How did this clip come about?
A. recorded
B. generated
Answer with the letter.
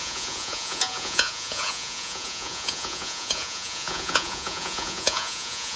B